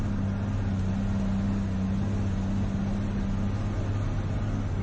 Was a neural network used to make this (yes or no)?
no